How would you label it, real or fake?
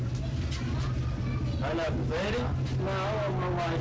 real